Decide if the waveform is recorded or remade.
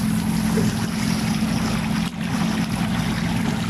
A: recorded